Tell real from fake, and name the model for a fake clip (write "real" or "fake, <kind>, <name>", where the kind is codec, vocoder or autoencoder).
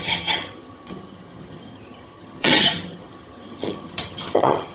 fake, vocoder, HiFi-GAN